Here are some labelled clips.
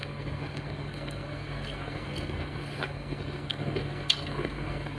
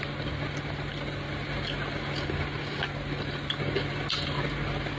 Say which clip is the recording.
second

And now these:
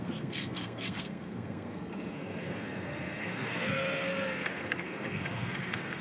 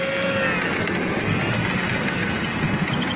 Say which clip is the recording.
second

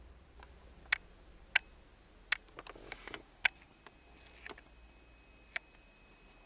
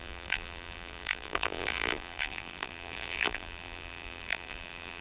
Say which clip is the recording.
first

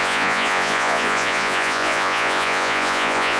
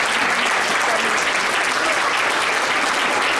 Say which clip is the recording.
second